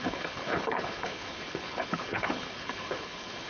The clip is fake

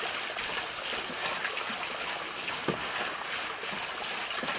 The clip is real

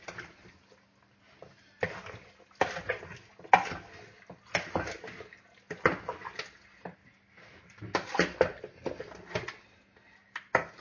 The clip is real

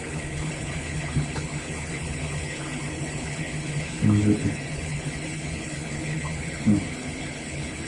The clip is fake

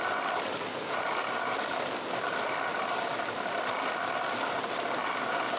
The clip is real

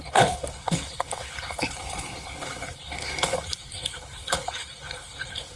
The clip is fake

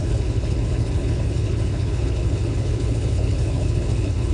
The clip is fake